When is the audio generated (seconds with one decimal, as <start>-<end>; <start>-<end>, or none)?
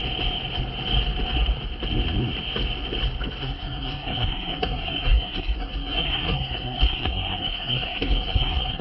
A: 3.4-8.8